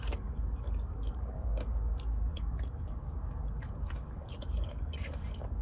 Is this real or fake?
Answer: fake